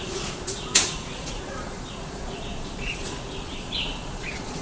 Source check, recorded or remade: remade